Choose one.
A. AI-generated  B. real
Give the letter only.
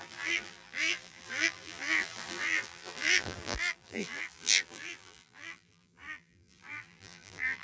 A